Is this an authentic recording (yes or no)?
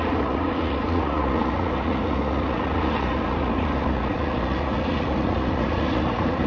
no